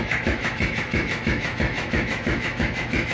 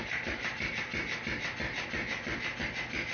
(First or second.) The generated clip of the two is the first